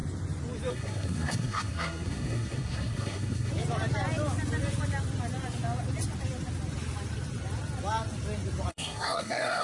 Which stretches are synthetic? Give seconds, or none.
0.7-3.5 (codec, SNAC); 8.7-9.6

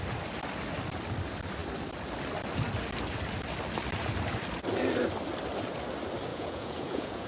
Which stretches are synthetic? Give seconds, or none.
6.3-7.3 (vocoder, Vocos)

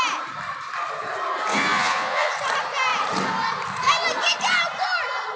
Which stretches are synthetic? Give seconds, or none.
1.5-2.3 (vocoder, Vocos)